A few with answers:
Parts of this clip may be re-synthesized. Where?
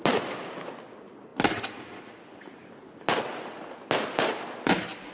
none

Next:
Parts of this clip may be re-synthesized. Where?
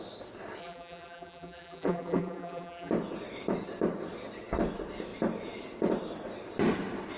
0.6-2.9 (vocoder, BigVGAN v2)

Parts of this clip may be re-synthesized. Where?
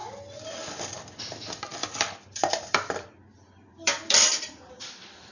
1.7-5.3 (vocoder, BigVGAN v2)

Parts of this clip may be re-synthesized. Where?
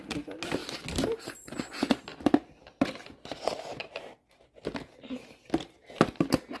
none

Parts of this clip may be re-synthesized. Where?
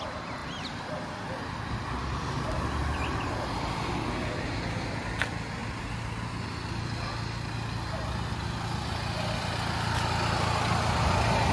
none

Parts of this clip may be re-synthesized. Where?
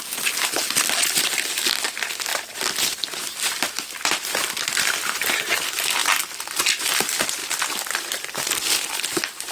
2.3-4.7 (vocoder, BigVGAN v2); 6.0-6.6